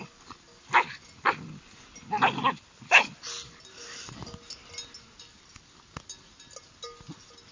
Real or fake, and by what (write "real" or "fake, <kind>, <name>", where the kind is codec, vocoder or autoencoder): real